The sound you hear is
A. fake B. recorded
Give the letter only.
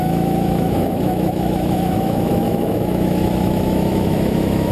A